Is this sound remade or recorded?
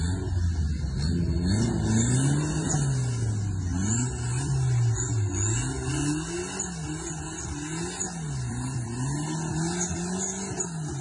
recorded